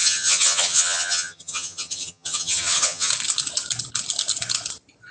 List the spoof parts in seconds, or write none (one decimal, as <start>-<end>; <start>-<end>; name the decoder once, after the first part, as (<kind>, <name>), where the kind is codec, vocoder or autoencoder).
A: 0.0-3.1 (vocoder, HiFi-GAN)